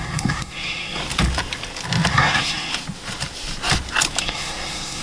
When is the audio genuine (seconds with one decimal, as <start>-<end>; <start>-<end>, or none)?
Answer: 1.0-2.1; 2.7-4.2